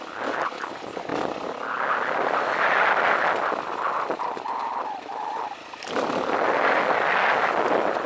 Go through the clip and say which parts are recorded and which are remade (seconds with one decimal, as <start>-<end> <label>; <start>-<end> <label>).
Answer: 0.0-8.1 recorded